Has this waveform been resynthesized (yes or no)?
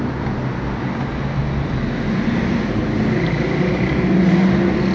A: no